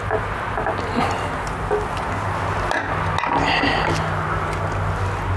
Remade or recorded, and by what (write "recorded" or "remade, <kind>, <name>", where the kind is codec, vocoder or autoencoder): recorded